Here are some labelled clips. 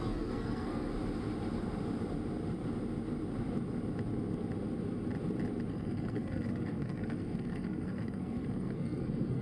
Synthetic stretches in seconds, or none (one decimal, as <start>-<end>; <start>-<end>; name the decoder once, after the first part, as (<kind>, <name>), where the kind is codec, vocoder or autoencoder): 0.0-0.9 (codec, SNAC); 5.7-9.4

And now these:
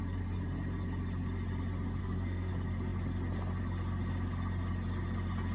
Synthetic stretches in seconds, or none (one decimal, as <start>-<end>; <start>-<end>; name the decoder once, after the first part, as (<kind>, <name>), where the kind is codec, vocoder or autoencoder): 2.0-2.5 (codec, SNAC)

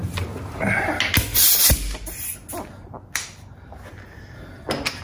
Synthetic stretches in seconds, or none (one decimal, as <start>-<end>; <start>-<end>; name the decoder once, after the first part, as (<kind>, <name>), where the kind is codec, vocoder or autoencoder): none